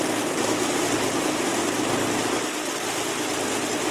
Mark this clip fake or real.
real